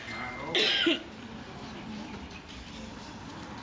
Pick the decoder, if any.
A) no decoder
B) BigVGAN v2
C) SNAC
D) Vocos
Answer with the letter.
A